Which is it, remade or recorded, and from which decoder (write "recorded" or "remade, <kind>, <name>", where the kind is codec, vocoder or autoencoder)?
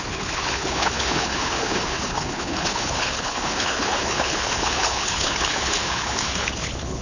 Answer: remade, codec, HILCodec